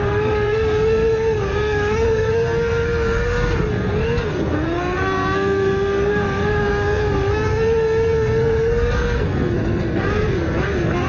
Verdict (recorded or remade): remade